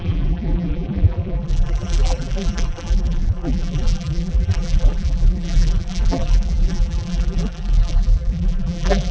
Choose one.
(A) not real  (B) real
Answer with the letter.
A